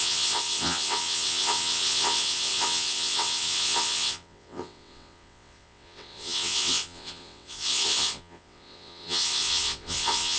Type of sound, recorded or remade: remade